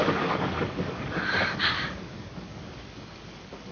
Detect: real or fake fake